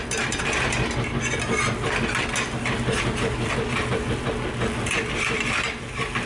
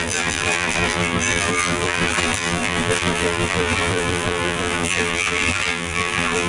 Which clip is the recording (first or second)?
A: first